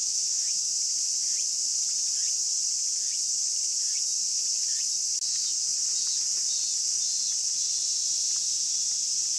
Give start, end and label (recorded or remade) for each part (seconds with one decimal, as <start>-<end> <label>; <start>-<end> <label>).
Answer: 0.0-0.7 remade; 0.7-9.4 recorded